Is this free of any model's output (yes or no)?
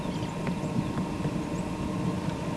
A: yes